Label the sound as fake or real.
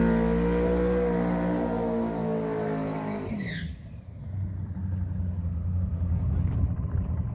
real